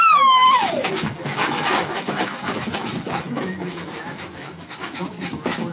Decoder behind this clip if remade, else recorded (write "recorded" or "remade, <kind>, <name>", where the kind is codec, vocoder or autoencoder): remade, autoencoder, DAC-VAE